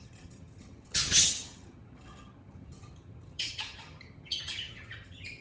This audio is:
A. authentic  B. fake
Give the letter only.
B